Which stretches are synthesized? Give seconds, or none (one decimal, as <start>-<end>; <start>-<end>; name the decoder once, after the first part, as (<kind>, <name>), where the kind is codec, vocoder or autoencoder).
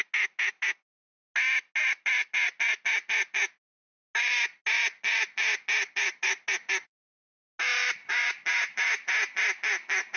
none